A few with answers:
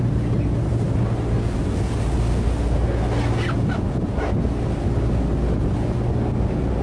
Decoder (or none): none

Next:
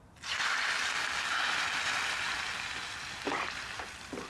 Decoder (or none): none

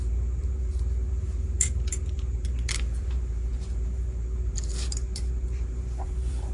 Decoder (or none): vocoder, BigVGAN v2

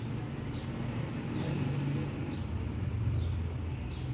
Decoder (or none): none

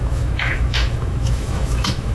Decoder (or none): autoencoder, DAC-VAE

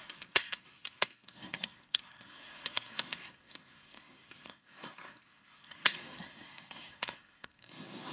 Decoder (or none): codec, SNAC